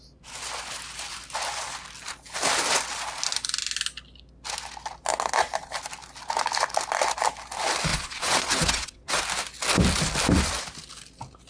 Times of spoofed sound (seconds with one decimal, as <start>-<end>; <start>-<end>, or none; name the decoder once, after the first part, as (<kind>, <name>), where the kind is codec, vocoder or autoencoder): 7.9-9.2 (vocoder, WaveNeXt)